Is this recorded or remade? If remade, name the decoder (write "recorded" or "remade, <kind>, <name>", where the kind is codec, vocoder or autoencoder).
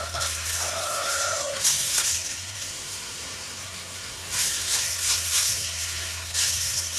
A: remade, codec, SNAC